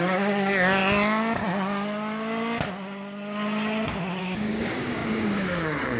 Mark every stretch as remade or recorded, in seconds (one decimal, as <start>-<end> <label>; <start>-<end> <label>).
0.0-0.8 remade; 0.8-4.2 recorded; 4.2-6.0 remade